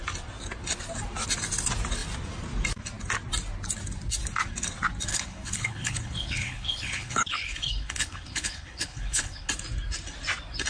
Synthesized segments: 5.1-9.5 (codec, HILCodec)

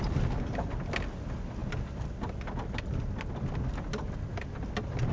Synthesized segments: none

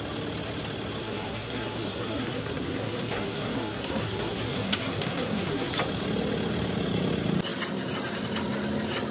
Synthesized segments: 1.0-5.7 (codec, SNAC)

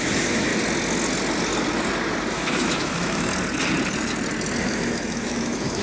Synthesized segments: 0.0-0.5 (autoencoder, DAC-VAE); 2.3-3.3; 4.6-5.8

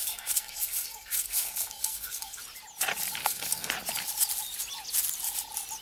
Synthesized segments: 0.0-2.4 (codec, SNAC); 3.2-3.7

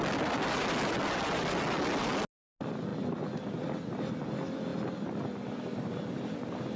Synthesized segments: none

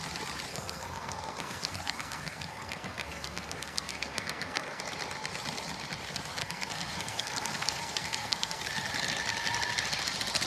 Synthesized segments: 0.5-4.8 (codec, SNAC); 6.4-8.6